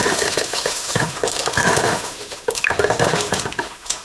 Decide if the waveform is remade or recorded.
remade